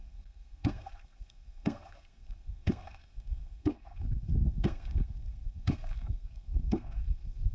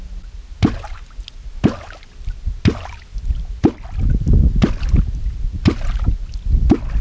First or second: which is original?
second